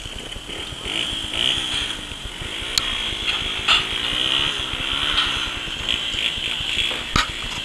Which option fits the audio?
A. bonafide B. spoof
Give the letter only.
A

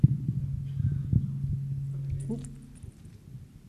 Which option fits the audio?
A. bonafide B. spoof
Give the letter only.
A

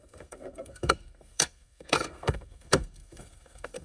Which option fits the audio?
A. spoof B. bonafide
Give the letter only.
A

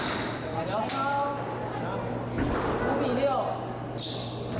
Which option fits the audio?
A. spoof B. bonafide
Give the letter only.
B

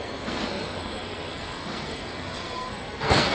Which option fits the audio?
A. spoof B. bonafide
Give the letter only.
A